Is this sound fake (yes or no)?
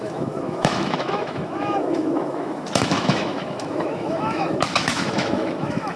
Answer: yes